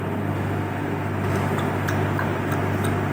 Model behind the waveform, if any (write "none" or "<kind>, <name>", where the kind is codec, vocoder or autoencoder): none